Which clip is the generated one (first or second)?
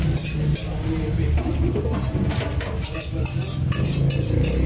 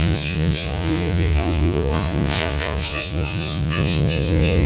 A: second